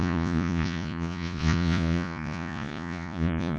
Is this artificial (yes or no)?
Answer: yes